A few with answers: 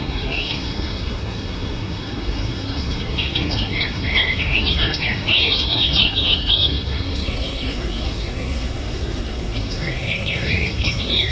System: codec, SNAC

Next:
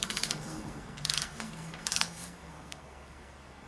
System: codec, SNAC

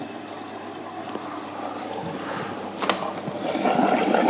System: none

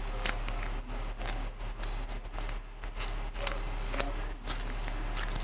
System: none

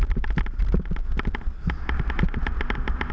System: none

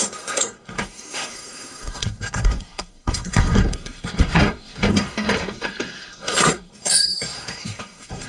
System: codec, SNAC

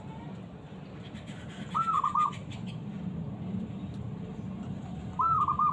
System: none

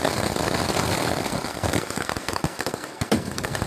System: codec, SNAC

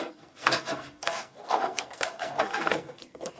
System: codec, SNAC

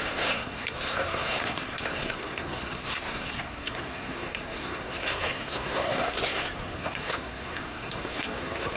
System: codec, SNAC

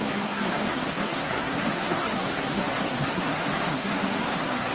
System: codec, SNAC